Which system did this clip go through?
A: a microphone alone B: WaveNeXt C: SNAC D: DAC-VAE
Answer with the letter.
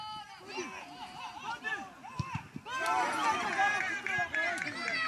A